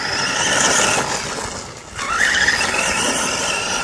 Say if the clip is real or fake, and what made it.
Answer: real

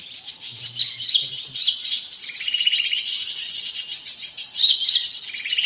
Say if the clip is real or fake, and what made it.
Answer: real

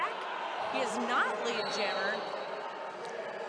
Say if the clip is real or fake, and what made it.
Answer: real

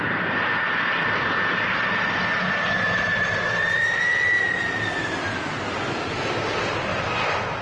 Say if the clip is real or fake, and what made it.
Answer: real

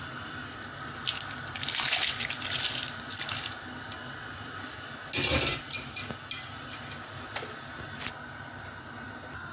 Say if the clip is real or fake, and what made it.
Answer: real